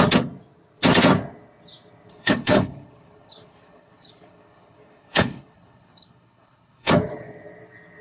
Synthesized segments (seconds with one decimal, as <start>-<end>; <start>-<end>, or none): 2.1-6.9